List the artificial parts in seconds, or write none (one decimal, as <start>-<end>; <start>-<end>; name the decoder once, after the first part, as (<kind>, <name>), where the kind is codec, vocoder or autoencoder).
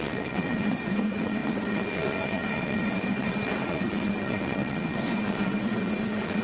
0.0-6.4 (vocoder, WaveNeXt)